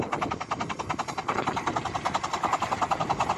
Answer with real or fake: real